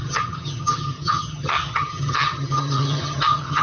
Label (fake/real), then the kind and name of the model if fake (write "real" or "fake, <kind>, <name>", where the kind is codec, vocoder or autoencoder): fake, vocoder, HiFi-GAN